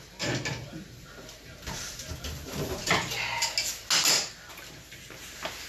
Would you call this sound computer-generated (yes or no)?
no